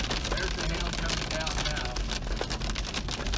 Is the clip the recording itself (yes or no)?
yes